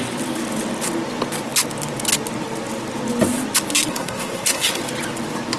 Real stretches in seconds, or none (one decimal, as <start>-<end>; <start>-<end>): 0.0-3.9; 4.8-5.6